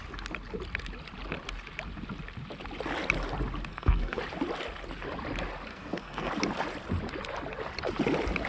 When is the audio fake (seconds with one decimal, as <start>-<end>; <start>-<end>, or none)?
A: 3.7-4.2; 5.7-6.3